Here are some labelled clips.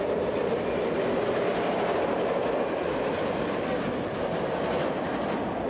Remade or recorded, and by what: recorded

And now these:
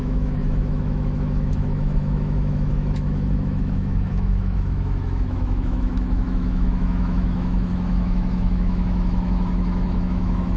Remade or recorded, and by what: remade, autoencoder, DAC-VAE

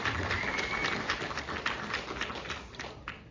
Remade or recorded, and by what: recorded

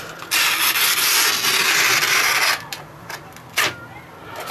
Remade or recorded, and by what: recorded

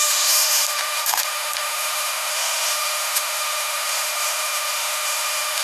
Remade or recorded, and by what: remade, autoencoder, DAC-VAE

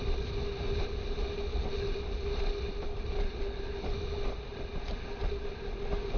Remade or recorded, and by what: recorded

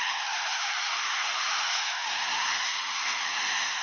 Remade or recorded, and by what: remade, autoencoder, DAC-VAE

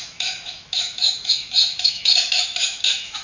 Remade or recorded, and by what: remade, autoencoder, DAC-VAE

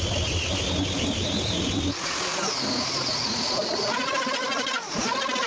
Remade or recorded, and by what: recorded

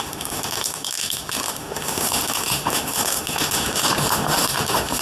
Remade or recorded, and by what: remade, autoencoder, DAC-VAE